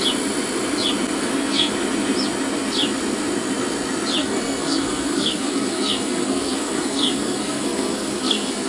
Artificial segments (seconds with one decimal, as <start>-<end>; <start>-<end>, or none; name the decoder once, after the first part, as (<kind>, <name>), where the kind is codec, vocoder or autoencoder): 1.2-1.7 (codec, SNAC); 4.2-8.7